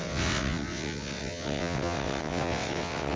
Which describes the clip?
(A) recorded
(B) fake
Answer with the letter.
B